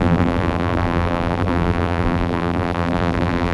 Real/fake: fake